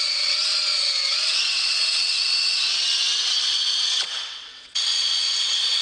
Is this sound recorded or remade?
remade